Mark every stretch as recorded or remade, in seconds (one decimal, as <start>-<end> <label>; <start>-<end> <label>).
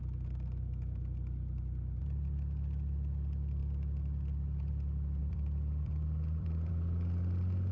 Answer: 0.0-5.2 recorded; 5.2-6.7 remade; 6.7-7.7 recorded